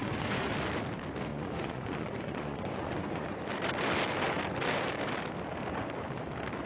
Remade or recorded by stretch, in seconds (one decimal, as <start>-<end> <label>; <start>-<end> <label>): 0.0-0.5 remade; 0.5-1.3 recorded; 1.3-3.4 remade; 3.4-6.7 recorded